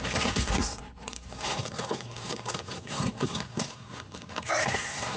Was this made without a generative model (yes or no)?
no